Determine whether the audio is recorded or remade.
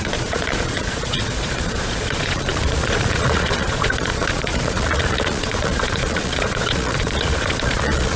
remade